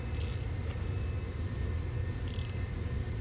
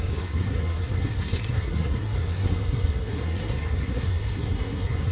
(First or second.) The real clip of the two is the first